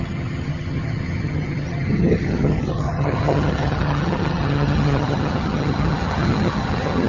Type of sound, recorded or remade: remade